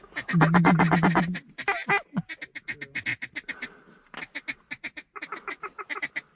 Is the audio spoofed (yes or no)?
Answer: no